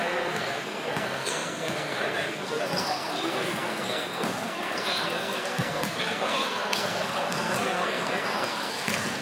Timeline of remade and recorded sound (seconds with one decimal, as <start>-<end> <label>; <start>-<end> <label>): 0.0-9.2 remade